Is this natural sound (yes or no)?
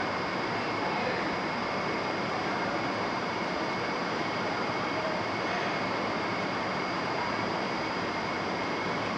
no